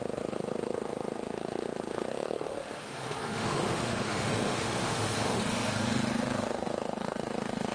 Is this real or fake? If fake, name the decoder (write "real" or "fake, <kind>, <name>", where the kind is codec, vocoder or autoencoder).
fake, autoencoder, DAC-VAE